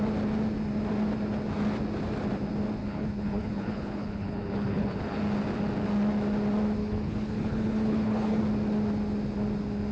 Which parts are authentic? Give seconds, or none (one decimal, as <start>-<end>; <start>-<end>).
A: 0.0-2.8; 5.2-6.8; 8.4-9.9